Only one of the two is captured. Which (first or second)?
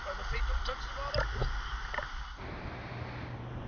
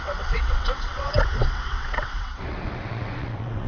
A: first